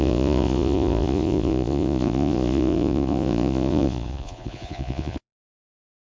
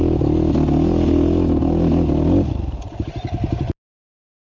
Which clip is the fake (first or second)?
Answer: first